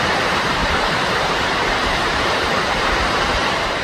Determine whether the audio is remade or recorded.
remade